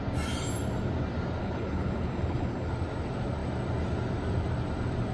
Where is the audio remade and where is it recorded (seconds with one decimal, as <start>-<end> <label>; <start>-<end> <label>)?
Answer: 0.0-1.4 recorded; 1.4-2.7 remade; 2.7-5.1 recorded